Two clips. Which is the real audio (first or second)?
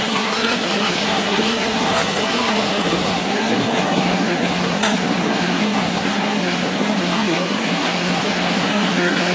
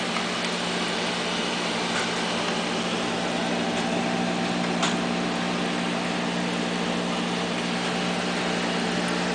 second